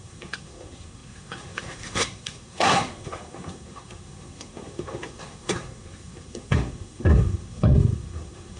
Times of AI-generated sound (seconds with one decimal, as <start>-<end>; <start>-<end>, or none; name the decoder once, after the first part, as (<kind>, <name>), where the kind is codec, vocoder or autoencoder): 0.0-8.6 (codec, SNAC)